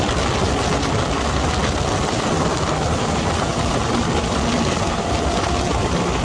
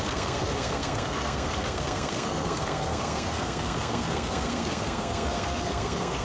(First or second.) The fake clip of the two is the second